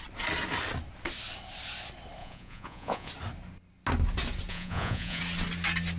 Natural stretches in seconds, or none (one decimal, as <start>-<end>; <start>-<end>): 0.0-2.2; 3.1-4.5; 5.2-6.0